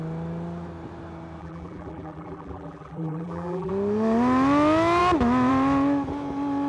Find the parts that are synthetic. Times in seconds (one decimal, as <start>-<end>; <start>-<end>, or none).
1.4-3.7